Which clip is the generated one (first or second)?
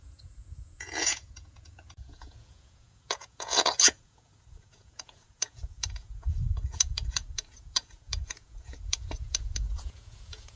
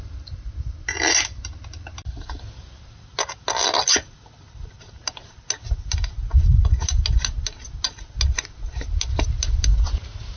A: first